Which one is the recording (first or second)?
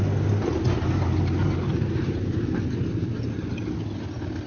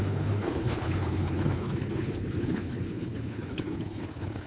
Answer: first